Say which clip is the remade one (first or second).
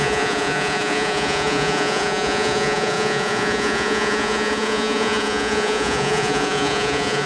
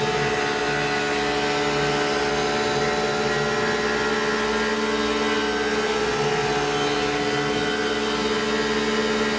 first